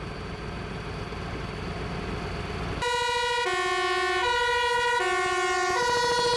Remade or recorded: recorded